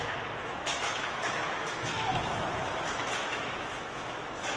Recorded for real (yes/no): no